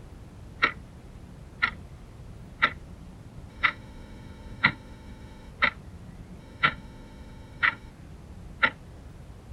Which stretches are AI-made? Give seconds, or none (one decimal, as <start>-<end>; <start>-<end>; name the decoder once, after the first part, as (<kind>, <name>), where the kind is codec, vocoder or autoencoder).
3.5-5.5 (autoencoder, DAC-VAE); 6.4-7.9